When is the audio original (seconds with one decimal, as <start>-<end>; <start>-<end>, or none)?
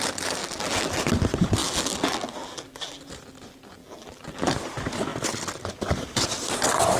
0.0-0.4; 1.1-1.6; 3.0-3.8; 4.5-7.0